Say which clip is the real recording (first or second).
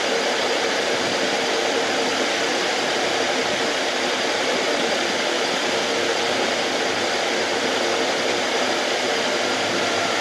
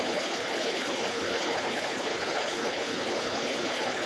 first